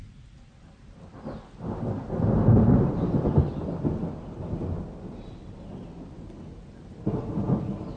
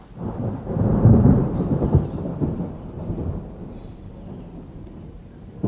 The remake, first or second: second